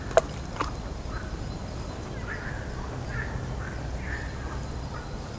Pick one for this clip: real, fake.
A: real